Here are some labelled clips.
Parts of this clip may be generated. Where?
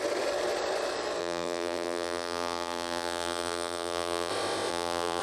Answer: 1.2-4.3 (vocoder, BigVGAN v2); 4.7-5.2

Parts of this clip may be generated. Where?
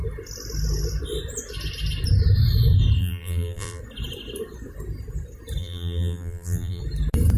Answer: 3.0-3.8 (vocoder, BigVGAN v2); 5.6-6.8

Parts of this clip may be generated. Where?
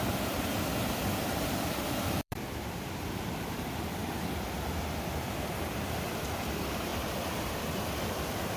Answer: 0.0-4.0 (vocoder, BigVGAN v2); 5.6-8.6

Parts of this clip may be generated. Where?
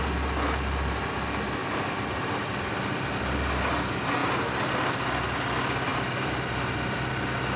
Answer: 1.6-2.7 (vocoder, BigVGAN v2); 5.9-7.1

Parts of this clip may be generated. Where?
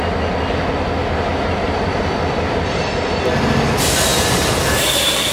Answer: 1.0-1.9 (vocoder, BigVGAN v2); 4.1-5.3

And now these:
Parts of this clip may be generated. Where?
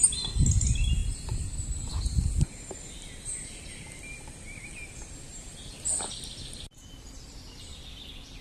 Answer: none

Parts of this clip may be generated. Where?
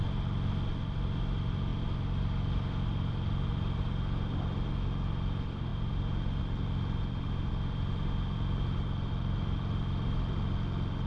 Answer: none